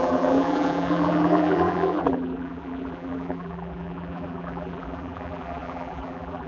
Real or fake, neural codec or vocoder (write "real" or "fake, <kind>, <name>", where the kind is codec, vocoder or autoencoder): fake, vocoder, BigVGAN v2